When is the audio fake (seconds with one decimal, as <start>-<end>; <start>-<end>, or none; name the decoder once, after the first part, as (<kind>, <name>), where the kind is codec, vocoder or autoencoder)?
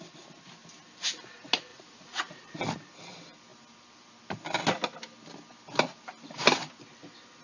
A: 1.7-2.6 (vocoder, Vocos)